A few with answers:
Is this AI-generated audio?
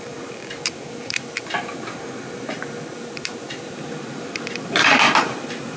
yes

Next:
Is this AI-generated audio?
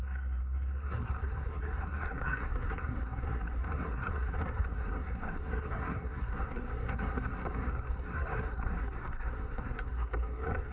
yes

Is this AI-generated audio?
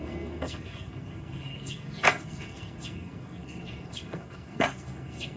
yes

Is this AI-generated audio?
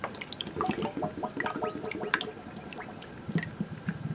no